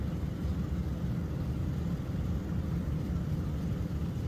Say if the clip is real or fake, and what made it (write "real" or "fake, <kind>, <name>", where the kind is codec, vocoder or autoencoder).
real